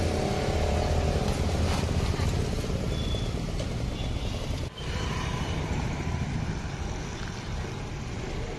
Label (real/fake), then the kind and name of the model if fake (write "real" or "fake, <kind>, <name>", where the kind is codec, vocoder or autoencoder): real